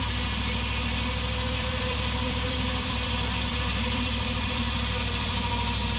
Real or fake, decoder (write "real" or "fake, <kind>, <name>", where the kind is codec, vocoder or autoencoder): fake, vocoder, BigVGAN v2